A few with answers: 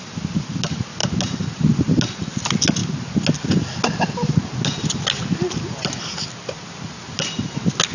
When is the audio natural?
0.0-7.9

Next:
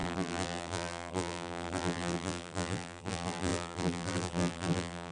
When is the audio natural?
none

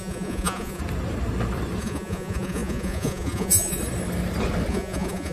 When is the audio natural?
0.8-1.8; 3.8-4.7